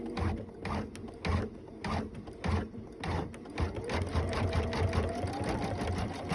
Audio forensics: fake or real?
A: real